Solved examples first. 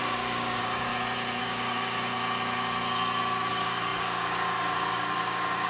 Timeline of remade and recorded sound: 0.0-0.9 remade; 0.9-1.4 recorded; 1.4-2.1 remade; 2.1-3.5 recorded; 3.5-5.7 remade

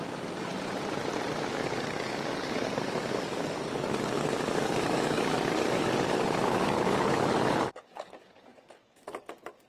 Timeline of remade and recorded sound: 0.0-0.5 remade; 0.5-1.5 recorded; 1.5-9.7 remade

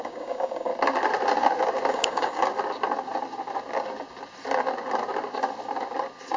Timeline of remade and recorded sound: 0.0-0.7 remade; 0.7-1.9 recorded; 1.9-2.4 remade; 2.4-6.4 recorded

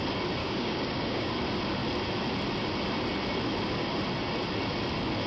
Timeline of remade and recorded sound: 0.0-0.4 recorded; 0.4-1.3 remade; 1.3-5.3 recorded

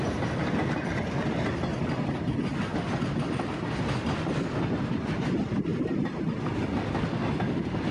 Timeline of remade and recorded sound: 0.0-7.9 recorded

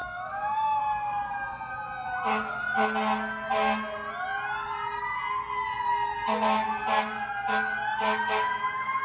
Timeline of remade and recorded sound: 0.0-0.8 remade; 0.8-9.0 recorded